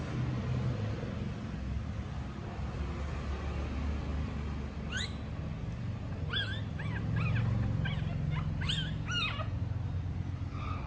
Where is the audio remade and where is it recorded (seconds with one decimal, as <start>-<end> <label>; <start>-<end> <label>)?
0.0-10.9 recorded